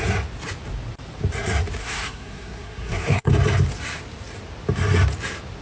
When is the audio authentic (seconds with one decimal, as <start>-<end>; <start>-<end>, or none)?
0.0-1.8; 3.3-5.6